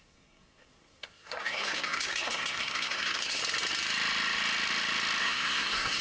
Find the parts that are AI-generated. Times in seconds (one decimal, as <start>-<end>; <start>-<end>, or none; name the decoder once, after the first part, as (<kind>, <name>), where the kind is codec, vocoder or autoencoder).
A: 0.0-3.4 (codec, SNAC); 5.2-6.0